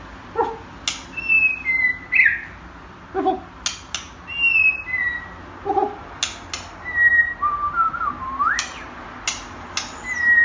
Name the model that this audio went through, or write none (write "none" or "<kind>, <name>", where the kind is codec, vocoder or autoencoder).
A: none